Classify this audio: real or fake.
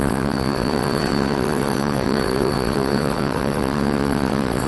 fake